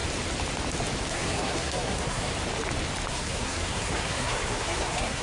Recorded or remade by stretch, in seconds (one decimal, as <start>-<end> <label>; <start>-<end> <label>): 0.0-1.1 recorded; 1.1-2.3 remade; 2.3-3.1 recorded; 3.1-5.2 remade